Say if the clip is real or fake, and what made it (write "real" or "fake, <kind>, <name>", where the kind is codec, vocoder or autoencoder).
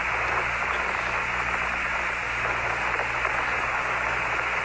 real